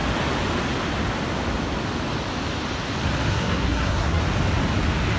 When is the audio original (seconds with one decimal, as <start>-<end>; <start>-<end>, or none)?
0.0-3.3; 4.2-5.2